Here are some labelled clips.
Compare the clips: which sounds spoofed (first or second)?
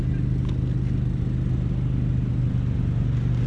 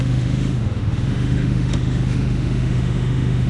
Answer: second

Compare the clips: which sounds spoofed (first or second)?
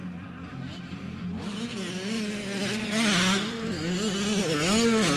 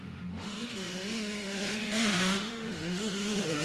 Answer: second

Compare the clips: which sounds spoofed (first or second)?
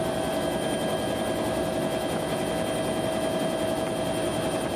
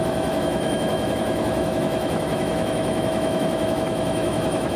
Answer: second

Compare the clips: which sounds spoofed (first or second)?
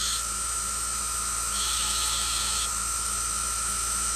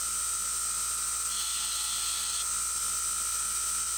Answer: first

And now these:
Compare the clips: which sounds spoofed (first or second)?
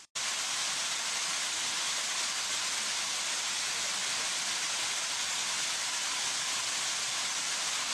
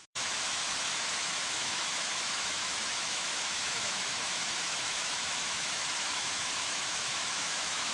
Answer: second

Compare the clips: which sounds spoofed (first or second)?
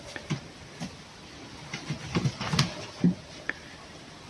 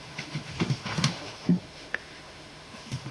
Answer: second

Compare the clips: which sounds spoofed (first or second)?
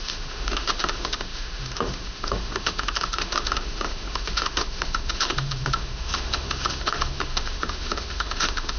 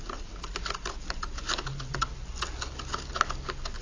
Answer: first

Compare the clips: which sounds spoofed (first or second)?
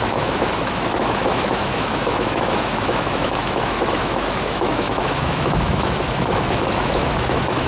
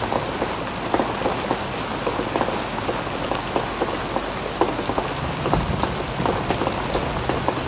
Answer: first